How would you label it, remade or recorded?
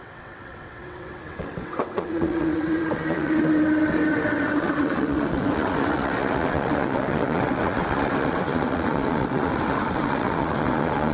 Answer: remade